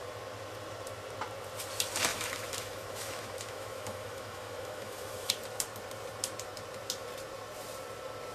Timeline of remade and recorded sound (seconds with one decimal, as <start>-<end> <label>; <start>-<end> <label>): 0.0-2.1 recorded; 2.1-5.3 remade; 5.3-8.3 recorded